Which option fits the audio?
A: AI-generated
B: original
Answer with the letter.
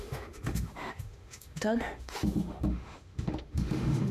A